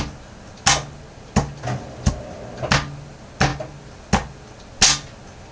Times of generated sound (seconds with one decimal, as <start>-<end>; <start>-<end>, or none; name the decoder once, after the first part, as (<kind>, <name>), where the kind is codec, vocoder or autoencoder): none